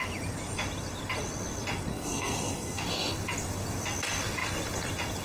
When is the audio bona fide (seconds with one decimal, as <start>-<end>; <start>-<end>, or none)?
0.0-1.9; 2.8-5.2